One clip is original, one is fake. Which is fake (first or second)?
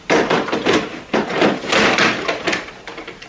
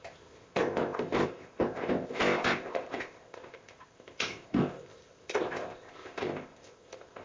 second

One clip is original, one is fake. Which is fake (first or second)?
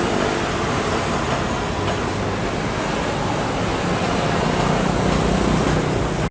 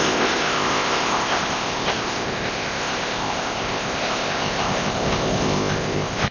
second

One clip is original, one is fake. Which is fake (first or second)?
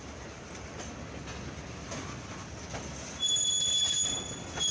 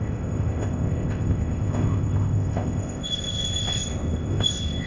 second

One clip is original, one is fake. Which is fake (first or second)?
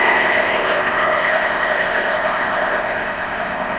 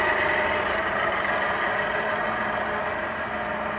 first